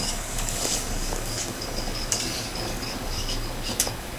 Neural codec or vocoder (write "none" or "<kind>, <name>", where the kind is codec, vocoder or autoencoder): codec, DAC